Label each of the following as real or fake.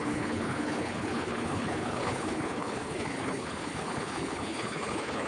fake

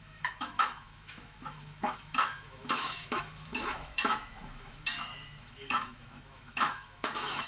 fake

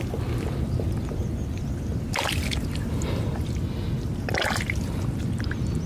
real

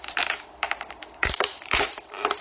fake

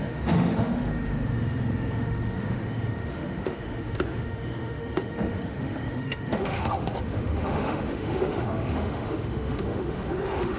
fake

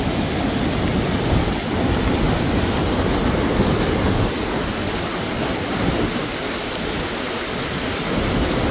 real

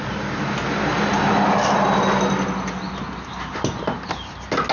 real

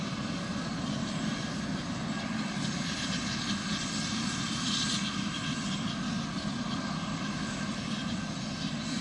real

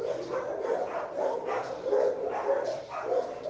real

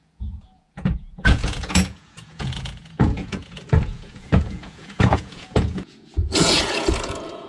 fake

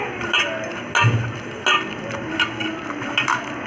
real